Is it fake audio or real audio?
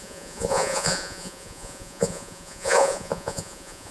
fake